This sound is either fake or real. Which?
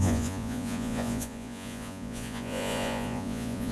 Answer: fake